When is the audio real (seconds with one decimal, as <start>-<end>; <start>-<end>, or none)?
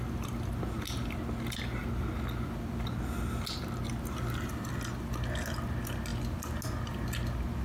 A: 0.0-7.6